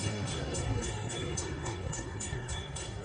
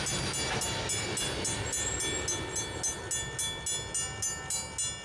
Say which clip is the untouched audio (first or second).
second